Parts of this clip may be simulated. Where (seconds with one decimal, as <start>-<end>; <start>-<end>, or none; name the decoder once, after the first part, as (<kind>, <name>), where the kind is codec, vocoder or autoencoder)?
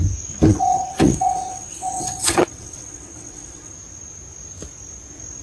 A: 0.5-3.7 (vocoder, WaveNeXt)